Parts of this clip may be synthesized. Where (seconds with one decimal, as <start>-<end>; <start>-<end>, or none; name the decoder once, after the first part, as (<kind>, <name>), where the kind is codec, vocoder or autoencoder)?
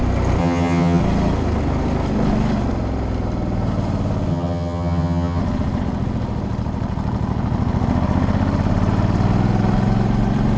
0.4-1.0 (vocoder, HiFi-GAN); 4.3-5.4